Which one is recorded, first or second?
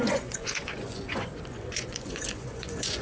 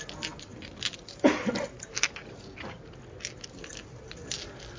second